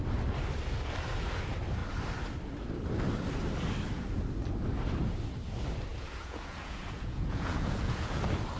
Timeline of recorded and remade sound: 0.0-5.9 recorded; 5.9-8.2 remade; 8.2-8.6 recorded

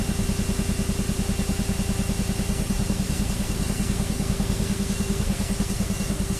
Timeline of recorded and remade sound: 0.0-2.5 recorded; 2.5-6.4 remade

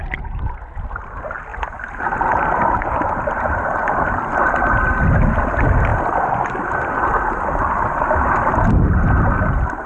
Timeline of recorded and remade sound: 0.0-5.9 recorded; 5.9-8.5 remade; 8.5-9.9 recorded

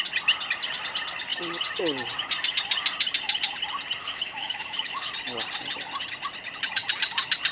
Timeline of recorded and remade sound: 0.0-4.0 recorded; 4.0-5.1 remade; 5.1-7.5 recorded

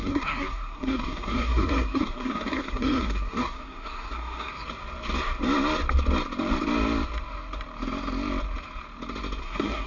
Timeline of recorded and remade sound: 0.0-4.5 remade; 4.5-9.4 recorded; 9.4-9.9 remade